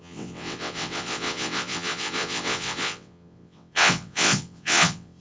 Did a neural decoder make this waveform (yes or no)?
yes